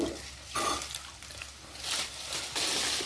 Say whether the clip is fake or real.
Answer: real